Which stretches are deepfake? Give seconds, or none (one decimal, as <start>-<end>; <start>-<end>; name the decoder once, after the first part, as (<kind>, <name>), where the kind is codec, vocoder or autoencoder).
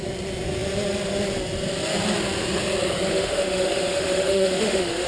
3.1-5.1 (autoencoder, DAC-VAE)